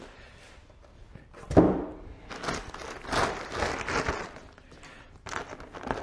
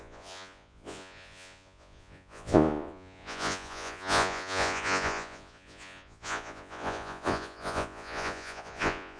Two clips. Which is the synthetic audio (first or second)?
second